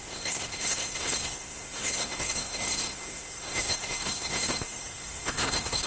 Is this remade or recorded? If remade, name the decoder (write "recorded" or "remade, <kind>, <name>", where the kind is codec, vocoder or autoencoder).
remade, codec, SNAC